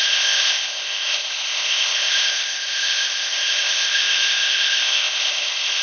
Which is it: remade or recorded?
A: remade